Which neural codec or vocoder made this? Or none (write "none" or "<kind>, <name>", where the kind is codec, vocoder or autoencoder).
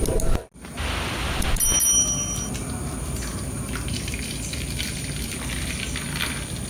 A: none